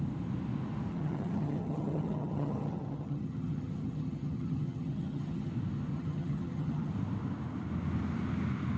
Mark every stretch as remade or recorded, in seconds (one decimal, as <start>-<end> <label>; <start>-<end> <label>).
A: 0.0-0.9 recorded; 0.9-5.5 remade; 5.5-5.9 recorded; 5.9-6.9 remade; 6.9-8.8 recorded